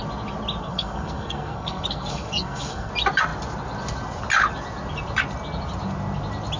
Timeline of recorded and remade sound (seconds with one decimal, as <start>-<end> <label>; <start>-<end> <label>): 0.0-0.6 recorded; 0.6-2.9 remade; 2.9-6.6 recorded